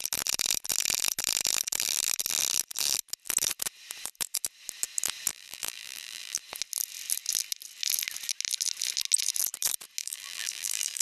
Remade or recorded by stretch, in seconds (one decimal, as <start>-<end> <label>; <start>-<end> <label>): 0.0-5.3 recorded; 5.3-6.4 remade; 6.4-10.0 recorded; 10.0-11.0 remade